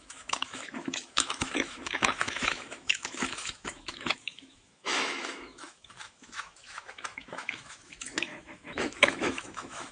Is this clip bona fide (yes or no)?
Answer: no